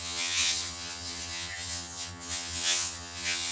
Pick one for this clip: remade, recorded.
remade